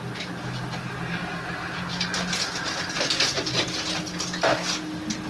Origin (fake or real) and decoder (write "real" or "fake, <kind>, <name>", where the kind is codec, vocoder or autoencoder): real